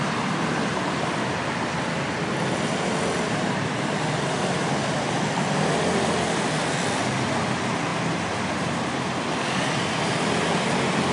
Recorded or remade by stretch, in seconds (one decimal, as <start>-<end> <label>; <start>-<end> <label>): 0.0-11.1 recorded